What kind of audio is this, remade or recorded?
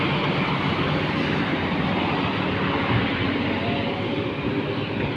recorded